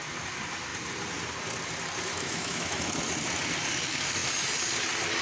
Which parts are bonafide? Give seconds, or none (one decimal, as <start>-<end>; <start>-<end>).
0.0-2.1; 3.0-5.2